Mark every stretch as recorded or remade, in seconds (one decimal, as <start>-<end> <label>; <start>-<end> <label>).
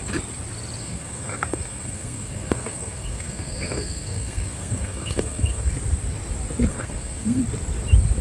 0.0-0.8 recorded; 0.8-5.7 remade; 5.7-6.7 recorded; 6.7-7.4 remade; 7.4-8.2 recorded